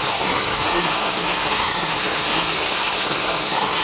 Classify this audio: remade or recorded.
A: remade